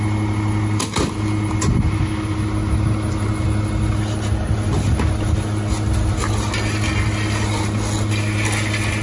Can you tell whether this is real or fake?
real